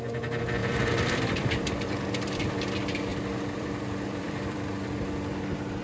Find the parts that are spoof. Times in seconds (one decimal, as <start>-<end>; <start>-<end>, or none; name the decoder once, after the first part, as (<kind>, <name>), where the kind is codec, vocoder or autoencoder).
0.6-2.4 (vocoder, BigVGAN v2); 3.1-4.7